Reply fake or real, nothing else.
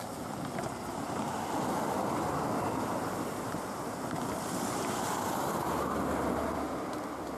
real